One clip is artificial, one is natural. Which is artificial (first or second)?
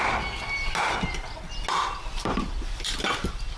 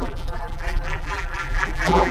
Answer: second